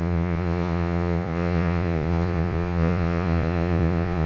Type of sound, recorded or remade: remade